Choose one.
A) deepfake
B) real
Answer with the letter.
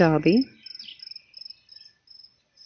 B